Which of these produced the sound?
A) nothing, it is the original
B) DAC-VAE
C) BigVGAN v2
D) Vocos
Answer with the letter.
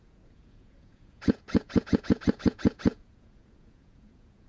D